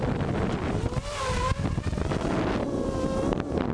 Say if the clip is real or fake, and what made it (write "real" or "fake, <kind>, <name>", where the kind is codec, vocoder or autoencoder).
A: real